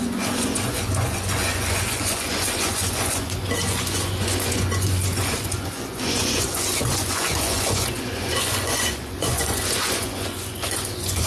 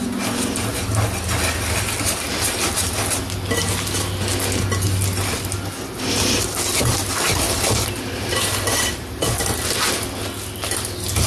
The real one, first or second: second